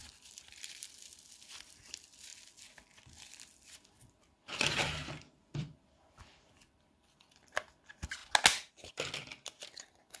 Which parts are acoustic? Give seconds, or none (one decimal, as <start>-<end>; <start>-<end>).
2.3-3.3; 8.2-8.7